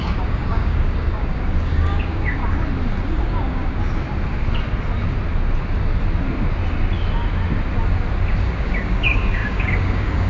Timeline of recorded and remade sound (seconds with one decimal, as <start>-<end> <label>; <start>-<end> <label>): 0.0-2.4 remade; 2.4-3.2 recorded; 3.2-3.7 remade; 3.7-8.4 recorded; 8.4-10.3 remade